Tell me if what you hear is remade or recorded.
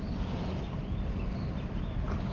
recorded